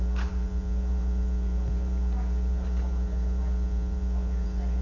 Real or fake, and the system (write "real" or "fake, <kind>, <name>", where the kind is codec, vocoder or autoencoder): fake, vocoder, Vocos